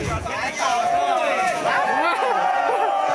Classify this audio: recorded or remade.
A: remade